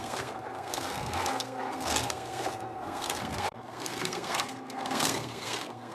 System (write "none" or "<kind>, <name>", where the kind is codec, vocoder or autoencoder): codec, SNAC